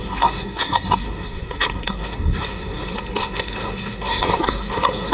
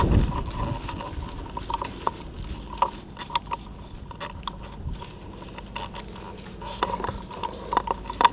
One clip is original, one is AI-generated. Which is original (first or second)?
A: second